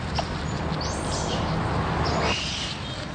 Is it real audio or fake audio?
real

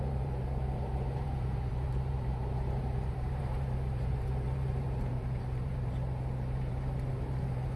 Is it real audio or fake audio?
fake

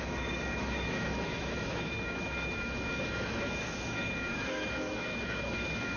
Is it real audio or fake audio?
fake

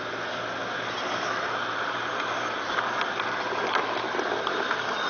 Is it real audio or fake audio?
real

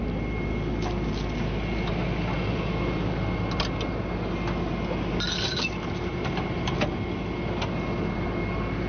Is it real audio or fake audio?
real